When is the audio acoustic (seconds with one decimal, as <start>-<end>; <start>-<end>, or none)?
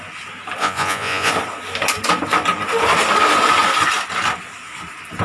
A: 0.0-0.6; 1.3-5.2